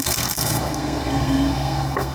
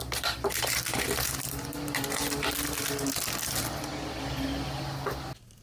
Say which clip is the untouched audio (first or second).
second